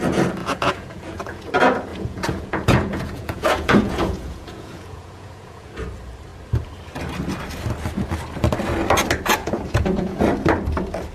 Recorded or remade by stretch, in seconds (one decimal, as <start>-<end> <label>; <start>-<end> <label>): 0.0-0.4 recorded; 0.4-1.5 remade; 1.5-1.9 recorded; 1.9-5.7 remade; 5.7-9.4 recorded; 9.4-10.2 remade; 10.2-11.1 recorded